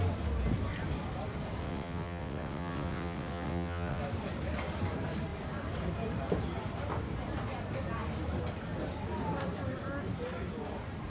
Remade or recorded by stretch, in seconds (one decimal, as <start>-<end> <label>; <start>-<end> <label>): 0.0-1.6 recorded; 1.6-4.0 remade; 4.0-11.1 recorded